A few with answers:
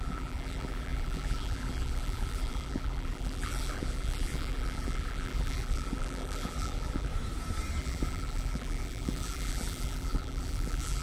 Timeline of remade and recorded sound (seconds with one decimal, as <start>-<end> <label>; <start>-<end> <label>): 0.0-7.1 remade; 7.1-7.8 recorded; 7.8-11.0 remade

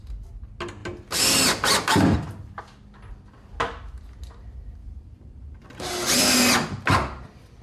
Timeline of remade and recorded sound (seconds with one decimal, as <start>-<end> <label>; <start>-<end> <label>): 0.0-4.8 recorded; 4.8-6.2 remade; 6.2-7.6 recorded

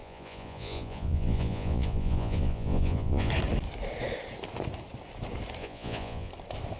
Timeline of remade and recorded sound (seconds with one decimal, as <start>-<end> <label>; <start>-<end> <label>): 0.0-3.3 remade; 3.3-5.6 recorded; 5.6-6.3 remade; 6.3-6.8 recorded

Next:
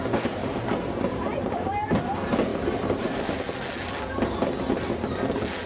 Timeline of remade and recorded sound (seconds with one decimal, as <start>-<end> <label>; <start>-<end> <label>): 0.0-0.4 recorded; 0.4-1.4 remade; 1.4-2.5 recorded; 2.5-3.4 remade; 3.4-5.7 recorded